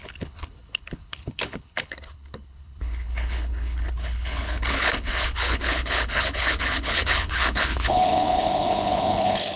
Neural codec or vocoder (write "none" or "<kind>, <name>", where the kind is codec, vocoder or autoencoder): codec, HILCodec